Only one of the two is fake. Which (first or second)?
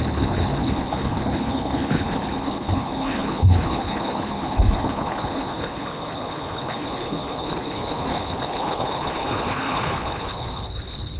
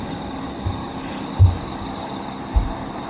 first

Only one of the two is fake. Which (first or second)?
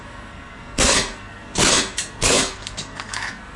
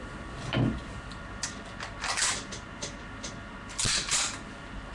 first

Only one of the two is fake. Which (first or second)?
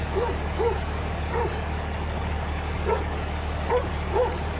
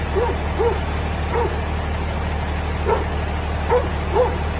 first